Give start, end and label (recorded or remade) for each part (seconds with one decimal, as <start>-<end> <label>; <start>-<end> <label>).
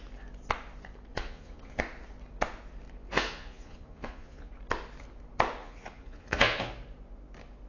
0.0-1.1 recorded; 1.1-1.8 remade; 1.8-3.1 recorded; 3.1-4.5 remade; 4.5-5.6 recorded; 5.6-6.7 remade; 6.7-7.7 recorded